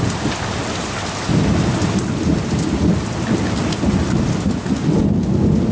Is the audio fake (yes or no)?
no